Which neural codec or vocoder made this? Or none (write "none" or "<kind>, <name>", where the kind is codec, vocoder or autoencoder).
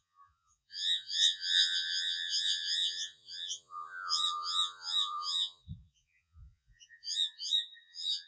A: vocoder, Vocos